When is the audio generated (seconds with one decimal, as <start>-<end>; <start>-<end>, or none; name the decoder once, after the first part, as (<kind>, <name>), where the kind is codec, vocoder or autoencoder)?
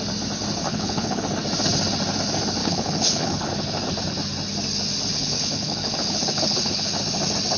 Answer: 0.6-1.2 (codec, HILCodec); 2.6-3.5; 5.1-7.0